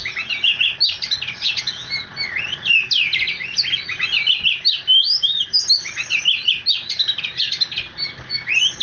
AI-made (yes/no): no